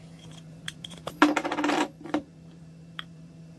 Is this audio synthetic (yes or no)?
yes